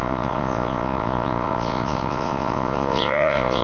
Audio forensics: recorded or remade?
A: remade